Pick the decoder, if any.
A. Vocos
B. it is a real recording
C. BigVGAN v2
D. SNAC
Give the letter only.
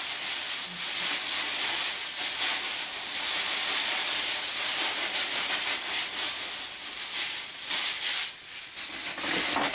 B